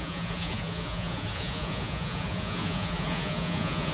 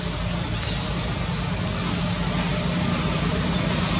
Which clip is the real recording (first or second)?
second